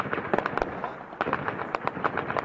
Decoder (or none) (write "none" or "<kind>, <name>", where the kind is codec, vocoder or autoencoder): none